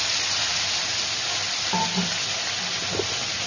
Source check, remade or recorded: recorded